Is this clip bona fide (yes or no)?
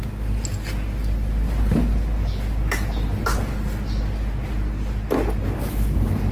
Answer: yes